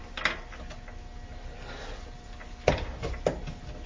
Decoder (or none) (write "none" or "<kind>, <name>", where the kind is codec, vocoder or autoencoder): none